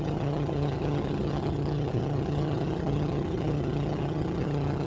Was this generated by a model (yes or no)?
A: yes